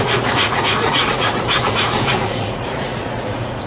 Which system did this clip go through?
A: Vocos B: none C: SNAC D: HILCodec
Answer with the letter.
A